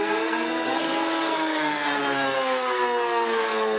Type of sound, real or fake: fake